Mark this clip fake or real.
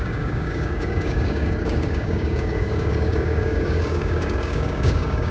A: fake